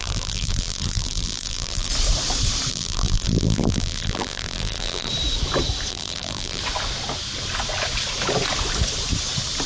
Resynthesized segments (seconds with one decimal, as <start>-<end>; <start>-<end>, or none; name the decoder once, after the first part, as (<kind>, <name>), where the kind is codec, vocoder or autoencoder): 0.0-1.9 (vocoder, BigVGAN v2); 2.7-5.1; 5.9-6.6